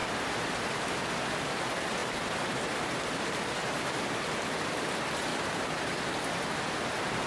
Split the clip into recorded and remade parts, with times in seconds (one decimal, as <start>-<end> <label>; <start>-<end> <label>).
0.0-0.8 remade; 0.8-2.0 recorded; 2.0-3.8 remade; 3.8-5.3 recorded; 5.3-5.8 remade; 5.8-7.3 recorded